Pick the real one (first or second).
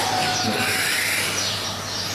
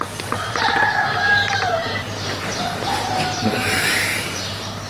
first